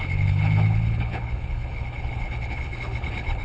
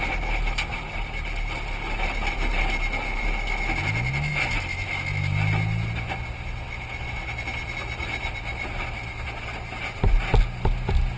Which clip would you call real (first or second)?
second